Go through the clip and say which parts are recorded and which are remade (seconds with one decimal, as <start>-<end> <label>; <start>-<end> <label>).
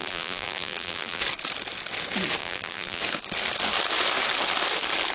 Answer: 0.0-1.2 remade; 1.2-2.4 recorded; 2.4-3.0 remade; 3.0-5.1 recorded